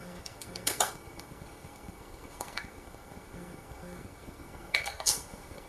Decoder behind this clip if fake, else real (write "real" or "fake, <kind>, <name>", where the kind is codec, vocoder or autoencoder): fake, codec, SNAC